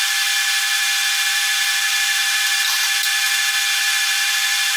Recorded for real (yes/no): no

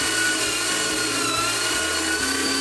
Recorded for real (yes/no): yes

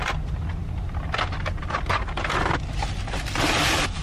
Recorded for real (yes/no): yes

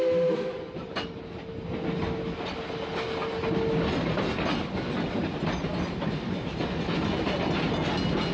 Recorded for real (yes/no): yes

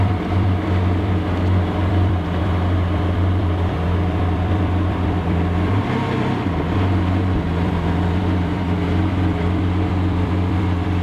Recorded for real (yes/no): no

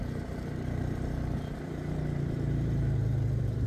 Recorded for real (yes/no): no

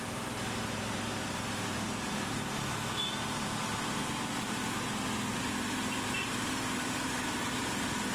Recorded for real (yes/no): no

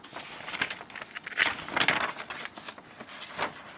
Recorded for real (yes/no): yes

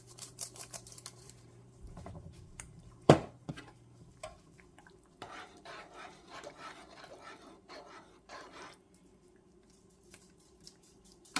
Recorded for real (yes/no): no